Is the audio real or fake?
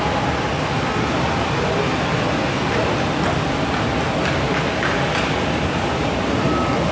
real